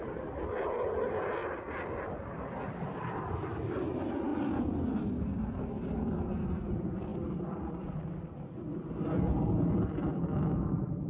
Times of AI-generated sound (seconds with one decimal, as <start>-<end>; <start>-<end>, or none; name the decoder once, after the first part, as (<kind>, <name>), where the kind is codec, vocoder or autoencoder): 4.3-5.5 (vocoder, BigVGAN v2); 7.1-8.2